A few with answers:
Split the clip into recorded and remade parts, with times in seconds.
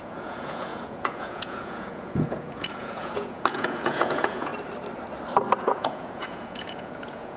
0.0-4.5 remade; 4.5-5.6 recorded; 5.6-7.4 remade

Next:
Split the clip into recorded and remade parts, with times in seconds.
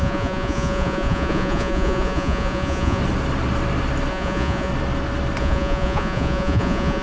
0.0-3.0 remade; 3.0-4.1 recorded; 4.1-4.7 remade; 4.7-5.4 recorded; 5.4-7.0 remade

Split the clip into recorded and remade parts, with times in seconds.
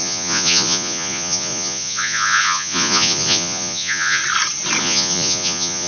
0.0-4.2 remade; 4.2-4.8 recorded; 4.8-5.9 remade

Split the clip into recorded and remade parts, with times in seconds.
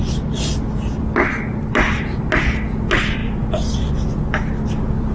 0.0-5.1 recorded